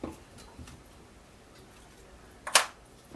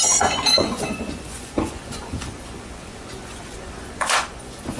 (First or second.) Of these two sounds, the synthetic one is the second